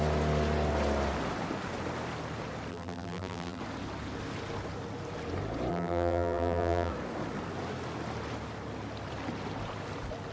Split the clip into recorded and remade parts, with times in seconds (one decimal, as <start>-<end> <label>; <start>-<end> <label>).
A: 0.0-2.7 recorded; 2.7-3.6 remade; 3.6-5.7 recorded; 5.7-6.9 remade; 6.9-10.3 recorded